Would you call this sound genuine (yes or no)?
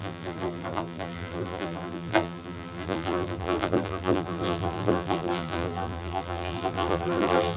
no